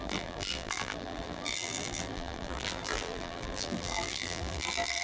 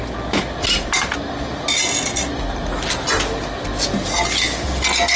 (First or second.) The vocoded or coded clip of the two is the first